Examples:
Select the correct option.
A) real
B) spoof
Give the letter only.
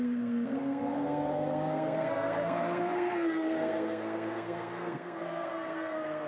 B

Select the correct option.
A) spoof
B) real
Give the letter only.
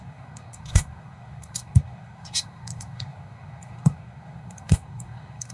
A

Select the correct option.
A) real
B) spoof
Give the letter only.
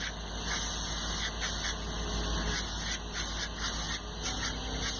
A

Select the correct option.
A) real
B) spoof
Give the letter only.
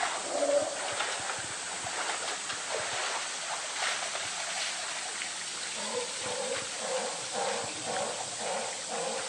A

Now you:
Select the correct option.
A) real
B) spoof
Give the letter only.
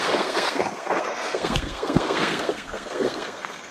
B